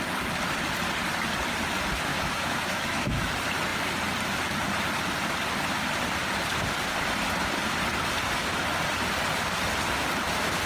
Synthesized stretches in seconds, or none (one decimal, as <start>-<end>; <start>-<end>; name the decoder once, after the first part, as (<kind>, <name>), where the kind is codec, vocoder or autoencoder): 2.1-3.3 (autoencoder, DAC-VAE)